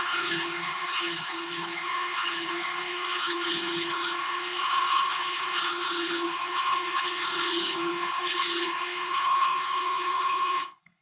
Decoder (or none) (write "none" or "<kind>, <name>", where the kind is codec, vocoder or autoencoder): codec, HILCodec